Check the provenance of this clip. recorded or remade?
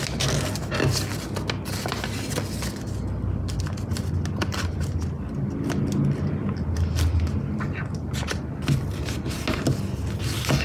recorded